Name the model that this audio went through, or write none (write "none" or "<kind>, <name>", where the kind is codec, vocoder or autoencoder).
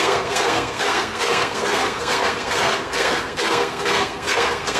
codec, SNAC